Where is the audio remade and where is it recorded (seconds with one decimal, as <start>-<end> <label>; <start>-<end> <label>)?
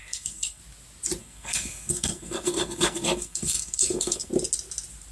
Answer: 0.0-0.6 remade; 0.6-1.2 recorded; 1.2-4.3 remade; 4.3-5.1 recorded